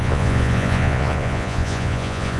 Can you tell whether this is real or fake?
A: fake